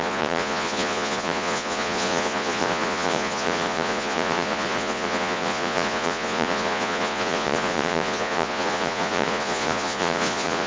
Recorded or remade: remade